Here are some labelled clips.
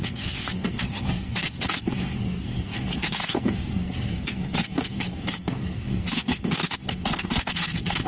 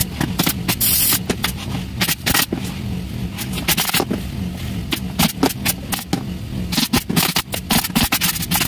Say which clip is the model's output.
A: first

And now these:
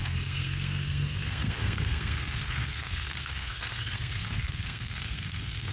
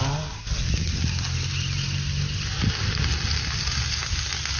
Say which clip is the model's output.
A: first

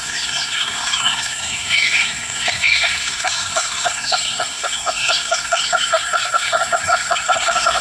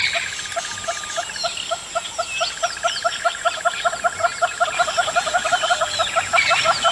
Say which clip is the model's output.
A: first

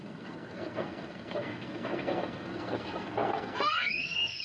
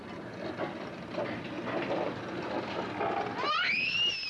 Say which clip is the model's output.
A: first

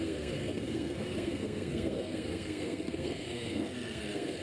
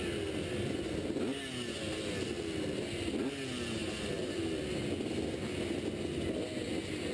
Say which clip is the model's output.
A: first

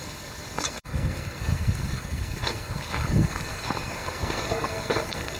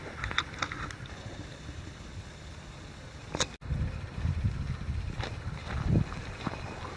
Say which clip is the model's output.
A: first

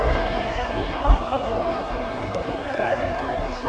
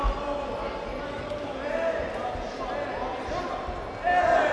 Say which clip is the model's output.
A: first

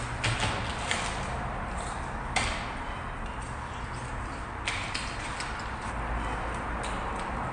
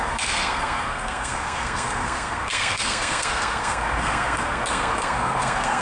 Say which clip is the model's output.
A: second